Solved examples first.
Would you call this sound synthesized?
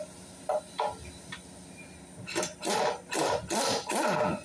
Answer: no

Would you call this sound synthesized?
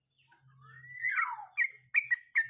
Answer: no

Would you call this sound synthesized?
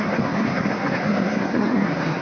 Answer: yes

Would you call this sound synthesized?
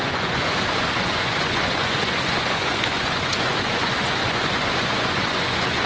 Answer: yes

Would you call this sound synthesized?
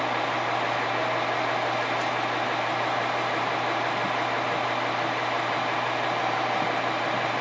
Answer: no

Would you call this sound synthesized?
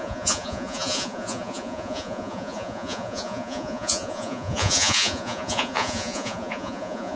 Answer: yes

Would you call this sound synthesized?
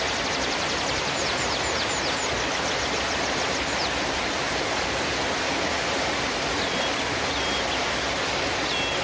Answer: no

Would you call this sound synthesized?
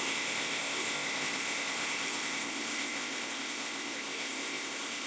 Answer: yes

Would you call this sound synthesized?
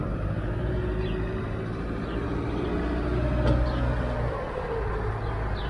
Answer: no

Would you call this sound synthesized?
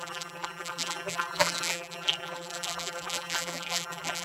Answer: yes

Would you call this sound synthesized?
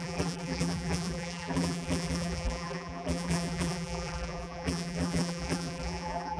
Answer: yes